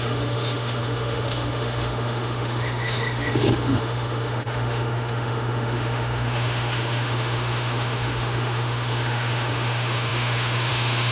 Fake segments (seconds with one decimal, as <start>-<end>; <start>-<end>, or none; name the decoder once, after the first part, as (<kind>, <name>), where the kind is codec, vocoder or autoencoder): 0.0-11.1 (autoencoder, DAC-VAE)